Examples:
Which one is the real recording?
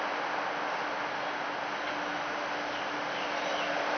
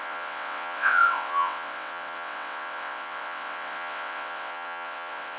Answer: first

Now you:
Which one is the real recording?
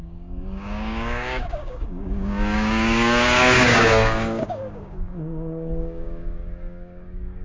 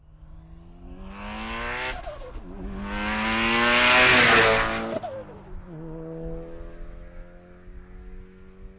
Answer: second